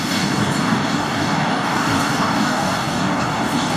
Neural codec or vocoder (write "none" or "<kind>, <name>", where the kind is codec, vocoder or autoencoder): codec, DAC